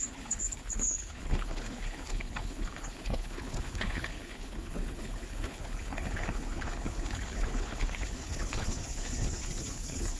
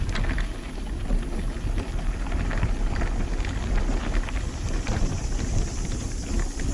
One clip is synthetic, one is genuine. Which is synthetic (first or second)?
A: first